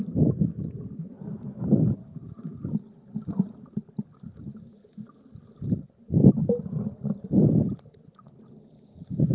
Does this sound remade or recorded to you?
recorded